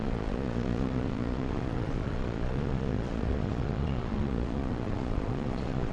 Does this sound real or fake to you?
fake